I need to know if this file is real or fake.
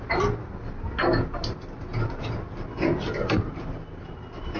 real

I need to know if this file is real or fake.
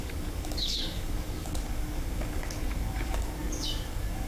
fake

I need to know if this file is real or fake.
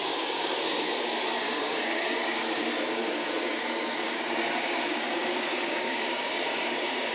fake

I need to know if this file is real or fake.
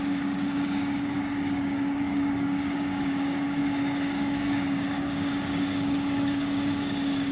fake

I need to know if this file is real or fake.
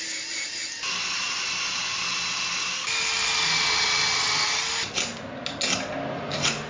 real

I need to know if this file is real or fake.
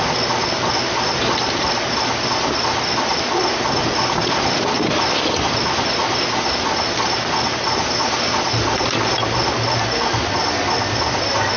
real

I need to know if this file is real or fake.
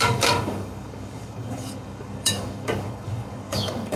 fake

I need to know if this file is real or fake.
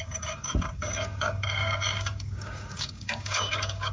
fake